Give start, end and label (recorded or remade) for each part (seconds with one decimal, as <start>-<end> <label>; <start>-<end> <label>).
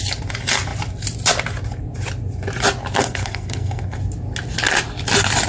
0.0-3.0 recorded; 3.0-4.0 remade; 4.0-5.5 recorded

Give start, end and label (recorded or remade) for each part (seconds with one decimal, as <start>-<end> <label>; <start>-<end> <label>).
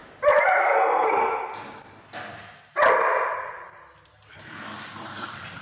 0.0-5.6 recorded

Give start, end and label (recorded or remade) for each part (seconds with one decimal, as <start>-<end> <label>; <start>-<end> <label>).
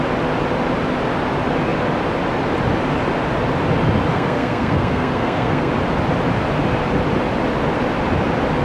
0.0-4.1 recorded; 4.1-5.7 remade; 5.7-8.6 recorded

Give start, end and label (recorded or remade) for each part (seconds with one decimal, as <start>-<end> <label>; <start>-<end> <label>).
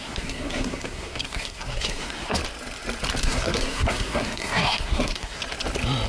0.0-2.4 remade; 2.4-3.2 recorded; 3.2-5.4 remade; 5.4-6.1 recorded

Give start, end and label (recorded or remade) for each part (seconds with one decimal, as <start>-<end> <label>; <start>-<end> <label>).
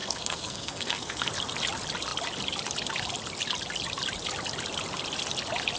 0.0-1.3 remade; 1.3-5.8 recorded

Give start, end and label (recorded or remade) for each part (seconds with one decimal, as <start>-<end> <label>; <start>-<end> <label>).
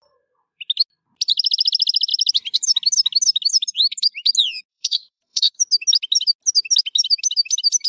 0.0-4.7 recorded; 4.7-5.6 remade; 5.6-7.9 recorded